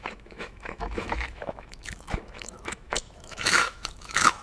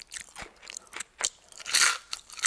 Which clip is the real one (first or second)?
second